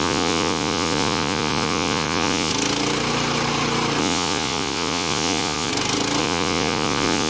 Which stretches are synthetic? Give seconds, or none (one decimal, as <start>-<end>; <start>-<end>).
0.0-2.5; 4.0-5.7; 6.2-7.3